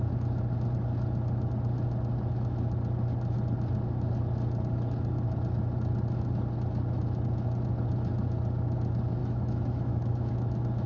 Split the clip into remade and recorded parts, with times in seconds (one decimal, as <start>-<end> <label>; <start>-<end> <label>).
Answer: 0.0-9.2 recorded; 9.2-10.3 remade; 10.3-10.9 recorded